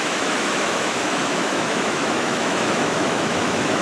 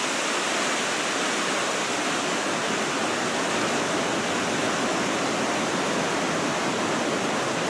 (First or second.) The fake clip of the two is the first